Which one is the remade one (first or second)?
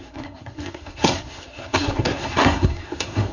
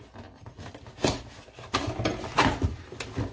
first